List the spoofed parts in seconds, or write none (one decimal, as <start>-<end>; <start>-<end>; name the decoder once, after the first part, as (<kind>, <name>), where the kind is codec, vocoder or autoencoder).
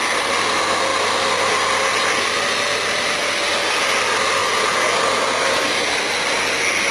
none